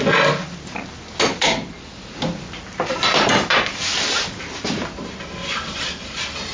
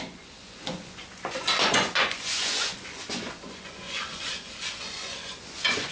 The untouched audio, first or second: first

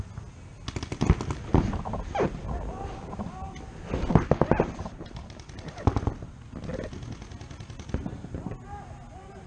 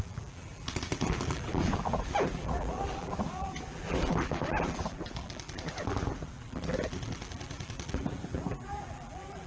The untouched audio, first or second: first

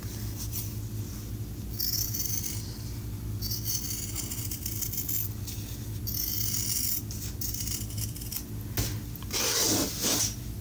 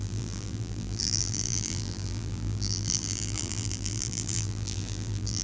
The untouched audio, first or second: first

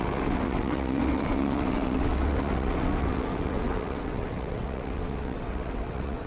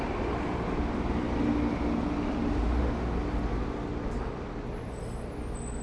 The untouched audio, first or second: second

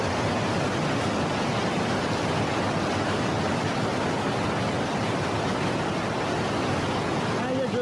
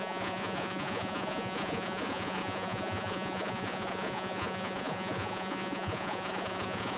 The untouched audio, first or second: first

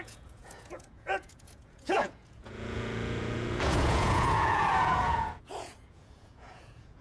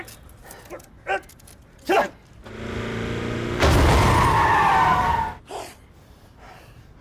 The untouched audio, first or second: second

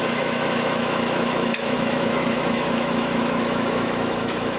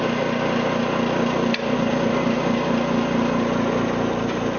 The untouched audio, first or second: second